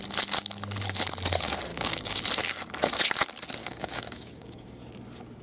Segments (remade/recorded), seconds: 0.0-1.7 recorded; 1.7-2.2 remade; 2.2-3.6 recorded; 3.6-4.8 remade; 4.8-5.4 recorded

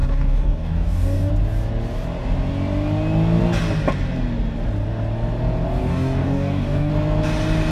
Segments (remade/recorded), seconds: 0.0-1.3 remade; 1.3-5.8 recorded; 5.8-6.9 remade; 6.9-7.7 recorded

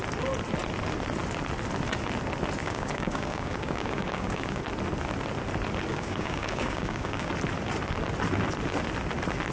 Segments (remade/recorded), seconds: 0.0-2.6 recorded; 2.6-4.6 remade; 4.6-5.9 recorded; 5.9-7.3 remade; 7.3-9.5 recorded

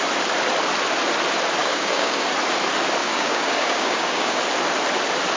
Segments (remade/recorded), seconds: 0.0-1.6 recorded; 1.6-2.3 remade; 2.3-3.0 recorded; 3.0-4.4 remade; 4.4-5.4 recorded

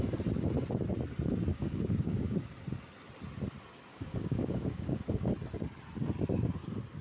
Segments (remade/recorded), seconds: 0.0-1.5 recorded; 1.5-2.5 remade; 2.5-3.9 recorded; 3.9-5.3 remade; 5.3-7.0 recorded

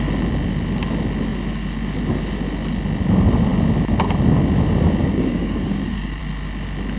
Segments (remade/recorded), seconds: 0.0-5.0 recorded; 5.0-6.2 remade; 6.2-7.0 recorded

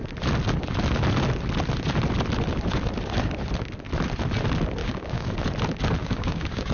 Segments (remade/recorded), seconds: 0.0-4.8 recorded; 4.8-5.3 remade; 5.3-6.0 recorded; 6.0-6.7 remade